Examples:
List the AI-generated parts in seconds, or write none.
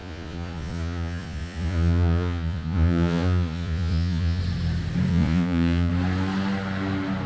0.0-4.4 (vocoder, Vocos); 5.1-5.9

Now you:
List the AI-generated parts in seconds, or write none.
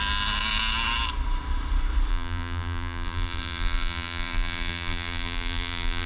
2.1-6.1 (vocoder, BigVGAN v2)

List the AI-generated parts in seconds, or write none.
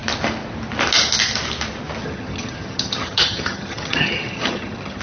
2.0-5.0 (vocoder, HiFi-GAN)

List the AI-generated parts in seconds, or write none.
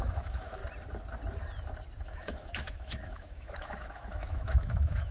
0.0-0.6 (autoencoder, DAC-VAE); 2.0-5.1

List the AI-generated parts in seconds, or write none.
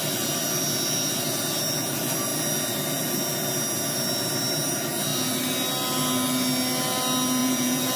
7.4-8.0 (vocoder, Vocos)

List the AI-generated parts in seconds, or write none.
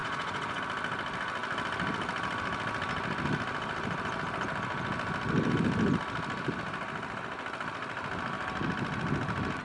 0.0-0.6 (vocoder, Vocos)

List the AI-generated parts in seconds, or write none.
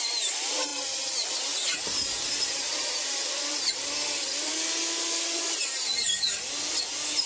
none